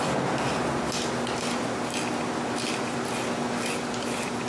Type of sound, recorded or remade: recorded